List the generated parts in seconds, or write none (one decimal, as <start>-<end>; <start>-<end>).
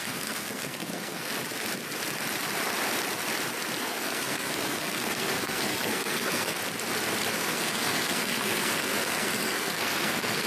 0.0-1.3; 3.8-6.6; 7.3-10.5